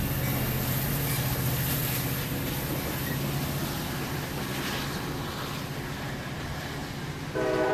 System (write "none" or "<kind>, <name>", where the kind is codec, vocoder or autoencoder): none